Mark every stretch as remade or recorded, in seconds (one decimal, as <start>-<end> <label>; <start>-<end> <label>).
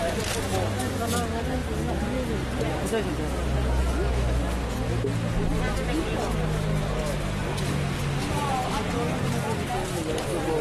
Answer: 0.0-10.6 recorded